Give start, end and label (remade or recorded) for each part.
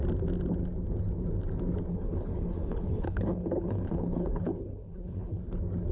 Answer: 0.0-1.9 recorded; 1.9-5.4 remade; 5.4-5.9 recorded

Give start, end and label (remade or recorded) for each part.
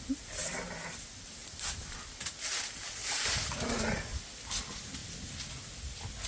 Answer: 0.0-1.4 recorded; 1.4-1.9 remade; 1.9-3.0 recorded; 3.0-3.7 remade; 3.7-6.3 recorded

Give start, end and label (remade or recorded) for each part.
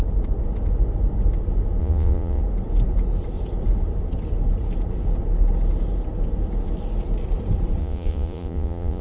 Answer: 0.0-1.8 recorded; 1.8-2.4 remade; 2.4-7.8 recorded; 7.8-9.0 remade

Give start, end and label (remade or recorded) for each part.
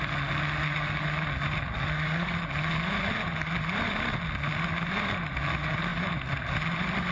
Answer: 0.0-5.9 recorded; 5.9-7.1 remade